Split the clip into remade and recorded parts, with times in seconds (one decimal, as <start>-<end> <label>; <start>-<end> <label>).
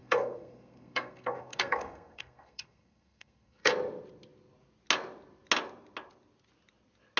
0.0-3.7 remade; 3.7-7.2 recorded